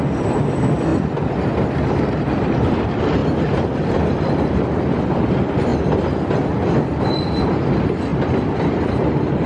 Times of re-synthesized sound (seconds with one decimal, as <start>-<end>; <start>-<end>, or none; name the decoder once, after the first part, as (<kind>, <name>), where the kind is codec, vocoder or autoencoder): 0.0-0.9 (vocoder, BigVGAN v2); 2.2-3.2; 3.9-9.5